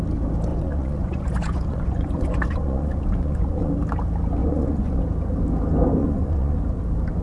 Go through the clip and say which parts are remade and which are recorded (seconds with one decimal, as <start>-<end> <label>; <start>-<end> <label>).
0.0-0.5 recorded; 0.5-3.7 remade; 3.7-4.4 recorded; 4.4-5.0 remade; 5.0-6.0 recorded; 6.0-6.6 remade; 6.6-7.2 recorded